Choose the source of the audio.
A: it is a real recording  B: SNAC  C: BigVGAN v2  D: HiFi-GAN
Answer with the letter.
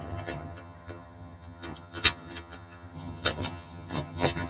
D